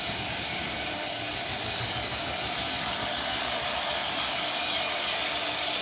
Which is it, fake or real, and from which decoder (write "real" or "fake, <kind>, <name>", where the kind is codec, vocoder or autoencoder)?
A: fake, codec, DAC